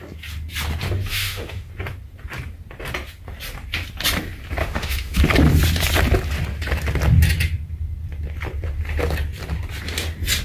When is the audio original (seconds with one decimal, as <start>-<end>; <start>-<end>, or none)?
0.0-1.1; 1.7-4.6; 5.2-10.4